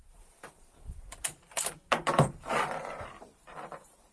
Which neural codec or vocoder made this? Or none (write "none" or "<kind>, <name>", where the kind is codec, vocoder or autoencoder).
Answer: vocoder, BigVGAN v2